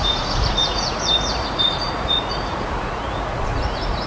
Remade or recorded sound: remade